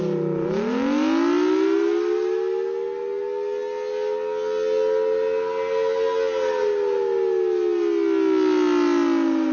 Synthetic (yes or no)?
no